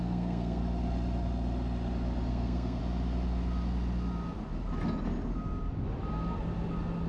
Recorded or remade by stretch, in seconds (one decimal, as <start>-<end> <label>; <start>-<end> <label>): 0.0-0.6 remade; 0.6-2.3 recorded; 2.3-2.8 remade; 2.8-7.1 recorded